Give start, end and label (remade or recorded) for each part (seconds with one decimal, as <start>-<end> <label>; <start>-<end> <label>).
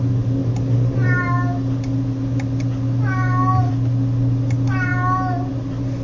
0.0-6.0 recorded